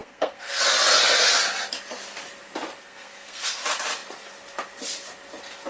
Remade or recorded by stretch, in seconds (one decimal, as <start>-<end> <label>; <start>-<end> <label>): 0.0-0.6 remade; 0.6-2.8 recorded; 2.8-3.6 remade; 3.6-5.7 recorded